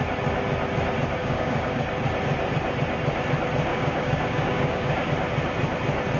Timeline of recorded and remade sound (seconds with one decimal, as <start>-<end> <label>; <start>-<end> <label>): 0.0-1.2 recorded; 1.2-1.8 remade; 1.8-3.7 recorded; 3.7-5.1 remade; 5.1-6.2 recorded